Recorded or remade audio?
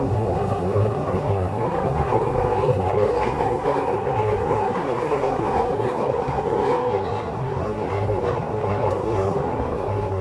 remade